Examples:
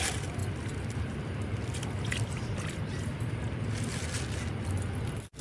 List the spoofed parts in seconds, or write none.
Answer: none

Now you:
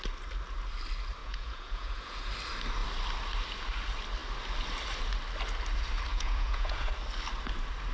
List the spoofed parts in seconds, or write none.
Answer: 1.2-2.3 (vocoder, Vocos); 6.1-6.9

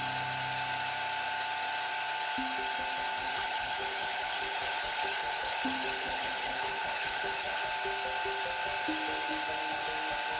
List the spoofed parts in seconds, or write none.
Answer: 3.2-7.6 (codec, HILCodec)